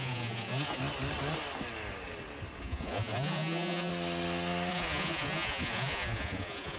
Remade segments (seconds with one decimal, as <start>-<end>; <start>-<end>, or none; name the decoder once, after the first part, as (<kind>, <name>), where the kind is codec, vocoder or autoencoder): 0.0-0.8 (vocoder, Vocos); 2.6-3.9; 4.7-6.8